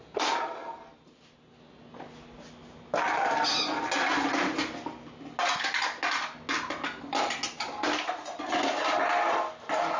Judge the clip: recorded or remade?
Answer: recorded